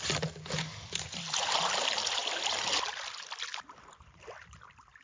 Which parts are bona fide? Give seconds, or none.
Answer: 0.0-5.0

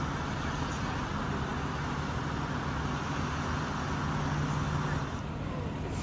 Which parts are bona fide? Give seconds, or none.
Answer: 0.0-6.0

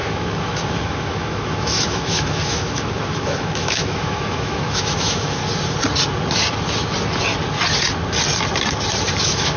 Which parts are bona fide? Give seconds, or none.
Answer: 5.4-9.2